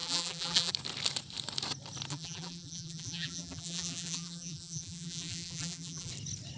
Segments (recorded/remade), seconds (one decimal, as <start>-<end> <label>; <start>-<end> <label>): 0.0-0.7 remade; 0.7-2.1 recorded; 2.1-6.1 remade; 6.1-6.6 recorded